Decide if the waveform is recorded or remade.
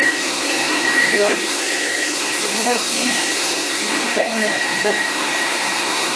remade